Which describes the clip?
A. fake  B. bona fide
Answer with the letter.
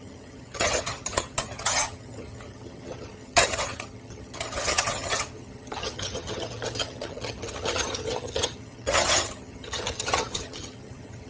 A